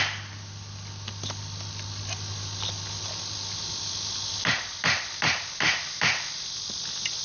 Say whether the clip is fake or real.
real